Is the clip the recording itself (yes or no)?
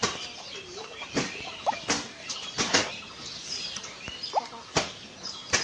yes